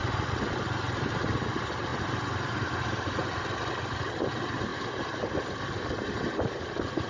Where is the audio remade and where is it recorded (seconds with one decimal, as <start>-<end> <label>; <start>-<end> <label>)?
0.0-0.8 recorded; 0.8-3.2 remade; 3.2-4.3 recorded; 4.3-4.7 remade; 4.7-5.3 recorded; 5.3-7.1 remade

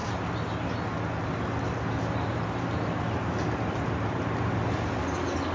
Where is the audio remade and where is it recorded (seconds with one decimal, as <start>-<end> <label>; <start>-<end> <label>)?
0.0-2.3 recorded; 2.3-4.2 remade; 4.2-5.5 recorded

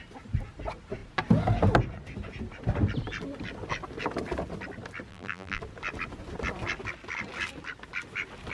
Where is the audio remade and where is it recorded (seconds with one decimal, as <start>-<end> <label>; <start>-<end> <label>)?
0.0-5.1 recorded; 5.1-5.6 remade; 5.6-8.5 recorded

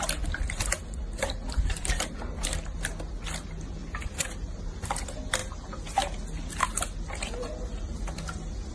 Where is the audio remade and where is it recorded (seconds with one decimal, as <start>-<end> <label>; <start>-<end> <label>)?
0.0-3.8 recorded; 3.8-4.8 remade; 4.8-8.7 recorded

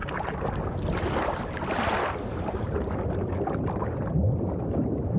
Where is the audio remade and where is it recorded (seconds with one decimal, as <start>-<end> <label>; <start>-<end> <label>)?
0.0-3.1 recorded; 3.1-5.2 remade

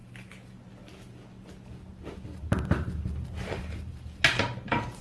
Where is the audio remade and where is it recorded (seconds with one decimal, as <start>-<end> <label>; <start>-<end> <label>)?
0.0-1.0 recorded; 1.0-5.0 remade

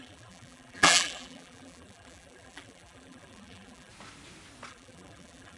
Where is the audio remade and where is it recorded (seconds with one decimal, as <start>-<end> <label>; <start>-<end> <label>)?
0.0-3.9 remade; 3.9-4.7 recorded; 4.7-5.6 remade

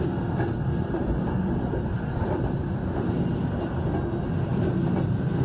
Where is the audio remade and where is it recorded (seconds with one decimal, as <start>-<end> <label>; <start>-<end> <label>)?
0.0-0.7 recorded; 0.7-3.9 remade; 3.9-4.5 recorded; 4.5-5.4 remade